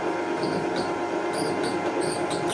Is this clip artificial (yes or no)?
no